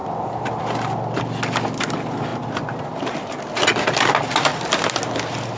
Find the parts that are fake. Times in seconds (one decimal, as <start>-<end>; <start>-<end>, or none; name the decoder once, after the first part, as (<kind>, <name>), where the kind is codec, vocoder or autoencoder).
none